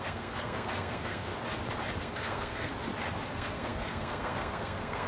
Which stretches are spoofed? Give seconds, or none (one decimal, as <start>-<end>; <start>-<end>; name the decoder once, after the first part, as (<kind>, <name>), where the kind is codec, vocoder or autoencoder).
0.0-1.3 (codec, SNAC); 2.0-2.7; 3.3-5.1

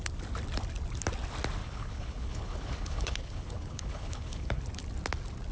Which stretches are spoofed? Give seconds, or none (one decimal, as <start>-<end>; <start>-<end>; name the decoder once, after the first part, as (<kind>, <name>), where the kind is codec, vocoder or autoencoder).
1.6-4.6 (codec, HILCodec)

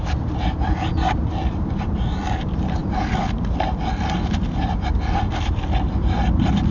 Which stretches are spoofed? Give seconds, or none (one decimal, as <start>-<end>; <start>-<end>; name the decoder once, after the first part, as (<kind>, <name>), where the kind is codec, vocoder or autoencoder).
none

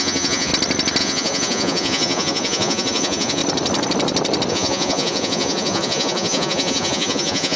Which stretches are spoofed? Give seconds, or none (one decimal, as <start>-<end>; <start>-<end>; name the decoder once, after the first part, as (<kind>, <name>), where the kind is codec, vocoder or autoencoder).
0.0-0.5 (vocoder, Vocos); 1.0-3.4; 4.5-7.6